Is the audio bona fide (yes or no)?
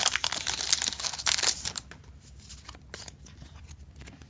yes